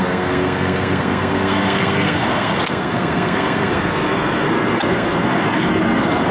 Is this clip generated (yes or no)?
yes